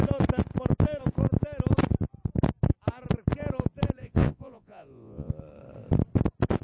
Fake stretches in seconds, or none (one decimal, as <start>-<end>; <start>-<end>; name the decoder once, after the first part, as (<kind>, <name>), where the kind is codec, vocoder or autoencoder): 4.0-5.3 (vocoder, Vocos)